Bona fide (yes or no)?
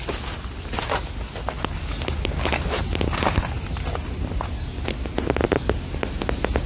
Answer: yes